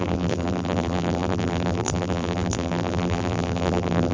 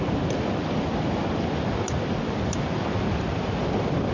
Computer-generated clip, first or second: first